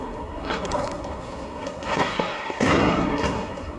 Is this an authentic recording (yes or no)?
no